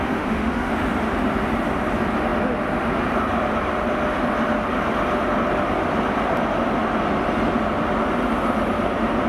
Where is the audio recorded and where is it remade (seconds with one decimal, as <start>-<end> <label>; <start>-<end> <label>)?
0.0-0.7 remade; 0.7-9.3 recorded